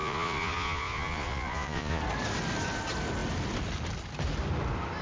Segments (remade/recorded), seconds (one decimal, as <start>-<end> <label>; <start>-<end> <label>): 0.0-2.0 remade; 2.0-5.0 recorded